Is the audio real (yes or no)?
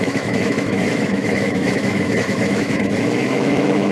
no